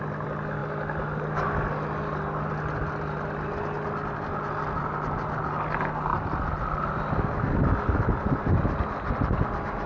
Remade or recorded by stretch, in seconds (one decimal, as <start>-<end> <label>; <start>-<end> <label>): 0.0-9.9 recorded